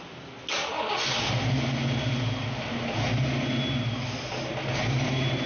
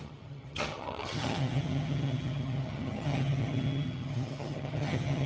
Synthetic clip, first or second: second